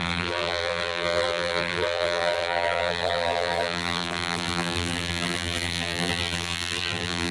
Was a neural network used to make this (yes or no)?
yes